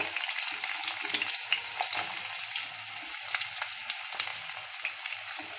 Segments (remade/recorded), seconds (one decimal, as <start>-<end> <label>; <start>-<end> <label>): 0.0-5.6 recorded